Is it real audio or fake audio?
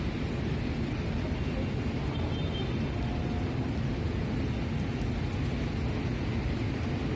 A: real